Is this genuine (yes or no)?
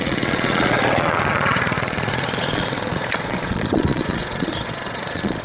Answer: no